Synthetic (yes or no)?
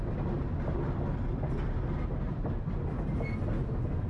no